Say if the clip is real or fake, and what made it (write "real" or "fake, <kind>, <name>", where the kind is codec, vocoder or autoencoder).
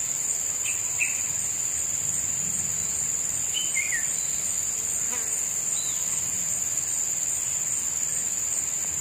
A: real